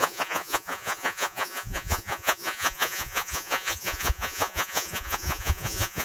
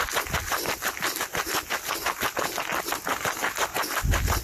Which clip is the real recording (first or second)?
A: second